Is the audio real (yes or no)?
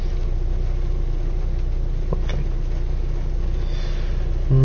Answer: yes